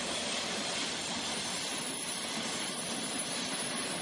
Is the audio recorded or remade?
remade